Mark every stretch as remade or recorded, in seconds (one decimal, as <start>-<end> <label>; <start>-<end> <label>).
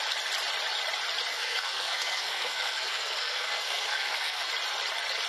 0.0-1.3 recorded; 1.3-4.5 remade; 4.5-5.3 recorded